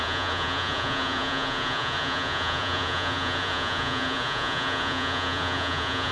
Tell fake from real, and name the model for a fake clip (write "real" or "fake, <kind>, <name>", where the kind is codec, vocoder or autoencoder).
fake, vocoder, Vocos